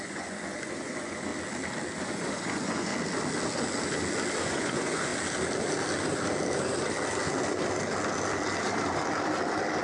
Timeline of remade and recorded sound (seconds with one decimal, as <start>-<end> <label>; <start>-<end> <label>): 0.0-1.3 remade; 1.3-2.0 recorded; 2.0-2.9 remade; 2.9-4.4 recorded; 4.4-5.1 remade; 5.1-9.8 recorded